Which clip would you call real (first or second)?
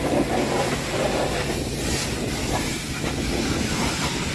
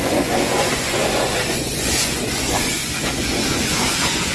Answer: first